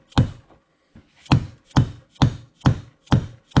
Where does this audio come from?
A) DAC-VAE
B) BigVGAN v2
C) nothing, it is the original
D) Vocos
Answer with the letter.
C